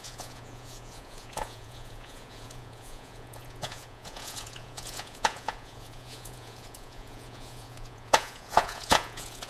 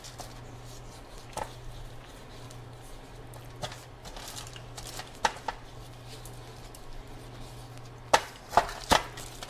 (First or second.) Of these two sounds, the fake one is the first